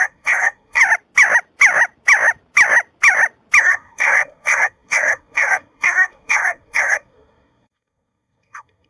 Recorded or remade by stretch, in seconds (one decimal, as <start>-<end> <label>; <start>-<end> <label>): 0.0-0.8 remade; 0.8-3.6 recorded; 3.6-8.9 remade

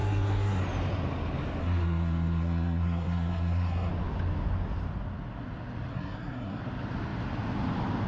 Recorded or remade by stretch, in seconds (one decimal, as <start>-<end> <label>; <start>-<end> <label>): 0.0-0.6 remade; 0.6-1.6 recorded; 1.6-3.9 remade; 3.9-5.9 recorded; 5.9-6.6 remade; 6.6-8.1 recorded

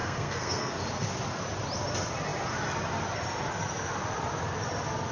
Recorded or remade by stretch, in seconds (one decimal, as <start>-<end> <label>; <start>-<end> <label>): 0.0-0.7 remade; 0.7-5.1 recorded

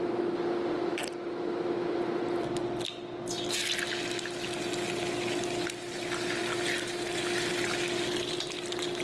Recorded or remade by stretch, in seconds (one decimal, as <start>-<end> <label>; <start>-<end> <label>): 0.0-9.0 recorded

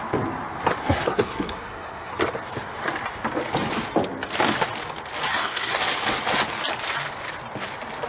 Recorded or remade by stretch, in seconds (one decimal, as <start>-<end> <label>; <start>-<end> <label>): 0.0-0.8 recorded; 0.8-2.2 remade; 2.2-5.3 recorded; 5.3-5.8 remade; 5.8-8.1 recorded

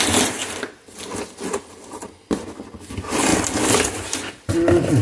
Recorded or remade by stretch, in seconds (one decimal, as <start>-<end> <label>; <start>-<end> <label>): 0.0-5.0 recorded